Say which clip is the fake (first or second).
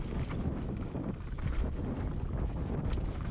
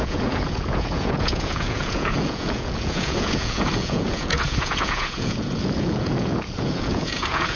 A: second